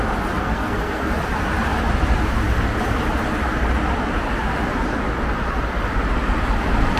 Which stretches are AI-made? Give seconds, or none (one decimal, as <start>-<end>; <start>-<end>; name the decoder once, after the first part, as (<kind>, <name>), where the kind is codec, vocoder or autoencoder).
0.4-1.1 (codec, SNAC)